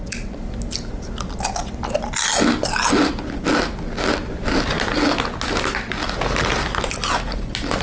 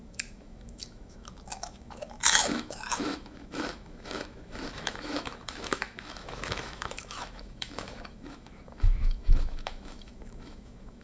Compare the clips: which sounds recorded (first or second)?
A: first